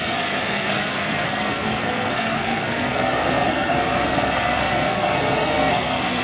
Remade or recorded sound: remade